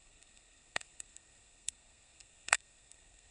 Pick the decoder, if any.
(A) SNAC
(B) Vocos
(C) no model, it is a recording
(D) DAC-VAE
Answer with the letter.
A